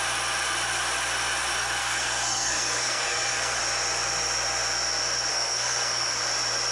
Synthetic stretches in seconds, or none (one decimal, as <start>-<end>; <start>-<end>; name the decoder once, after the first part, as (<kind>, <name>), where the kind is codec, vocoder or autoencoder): 1.8-3.6 (codec, SNAC); 5.3-6.2